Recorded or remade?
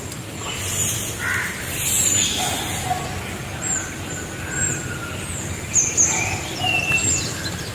recorded